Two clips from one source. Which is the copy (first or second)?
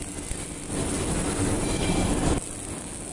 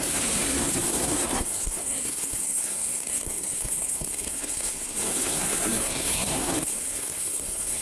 second